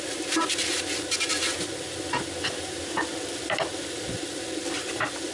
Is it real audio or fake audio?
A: real